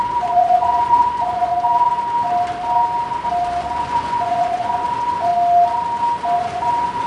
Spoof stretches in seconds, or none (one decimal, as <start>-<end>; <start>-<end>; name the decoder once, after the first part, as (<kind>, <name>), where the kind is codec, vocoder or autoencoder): 0.0-1.5 (vocoder, Vocos); 3.6-5.3; 6.4-7.1